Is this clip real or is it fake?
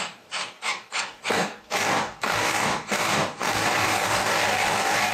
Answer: fake